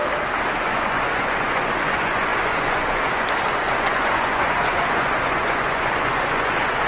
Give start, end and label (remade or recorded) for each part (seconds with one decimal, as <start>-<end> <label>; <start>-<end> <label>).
0.0-0.6 recorded; 0.6-6.9 remade